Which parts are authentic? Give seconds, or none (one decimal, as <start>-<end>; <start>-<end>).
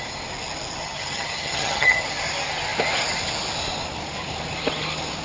0.0-0.8; 2.0-5.2